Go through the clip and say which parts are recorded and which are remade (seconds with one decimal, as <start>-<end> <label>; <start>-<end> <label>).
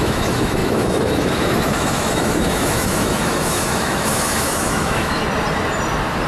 0.0-5.2 remade; 5.2-6.3 recorded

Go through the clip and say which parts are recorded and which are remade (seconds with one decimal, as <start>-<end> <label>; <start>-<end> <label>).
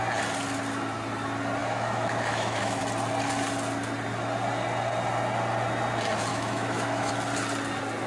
0.0-1.6 recorded; 1.6-2.8 remade; 2.8-6.3 recorded; 6.3-7.1 remade; 7.1-8.1 recorded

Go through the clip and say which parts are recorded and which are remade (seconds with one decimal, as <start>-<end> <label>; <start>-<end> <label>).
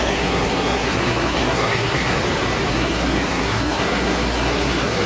0.0-2.2 remade; 2.2-2.7 recorded; 2.7-5.1 remade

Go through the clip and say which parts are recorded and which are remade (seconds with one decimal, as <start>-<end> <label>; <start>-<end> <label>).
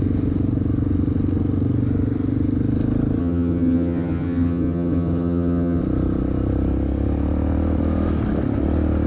0.0-3.2 recorded; 3.2-5.8 remade; 5.8-9.1 recorded